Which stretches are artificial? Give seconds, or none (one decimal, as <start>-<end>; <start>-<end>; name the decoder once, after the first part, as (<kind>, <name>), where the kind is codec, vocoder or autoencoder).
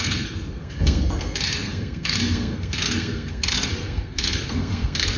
0.0-5.2 (codec, SNAC)